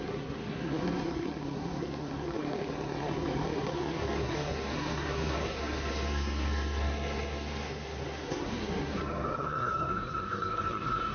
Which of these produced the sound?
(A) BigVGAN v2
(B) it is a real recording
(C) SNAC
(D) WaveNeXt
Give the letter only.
C